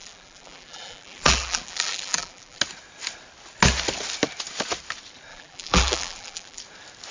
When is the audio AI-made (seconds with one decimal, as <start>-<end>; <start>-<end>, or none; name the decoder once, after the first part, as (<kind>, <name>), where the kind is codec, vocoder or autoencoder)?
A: 0.0-2.6 (vocoder, BigVGAN v2); 5.3-6.6